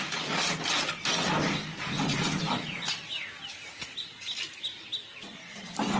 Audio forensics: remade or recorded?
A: recorded